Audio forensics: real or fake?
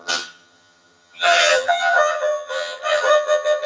fake